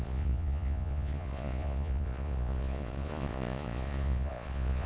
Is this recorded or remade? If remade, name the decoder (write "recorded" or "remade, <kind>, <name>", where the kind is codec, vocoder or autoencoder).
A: remade, vocoder, Vocos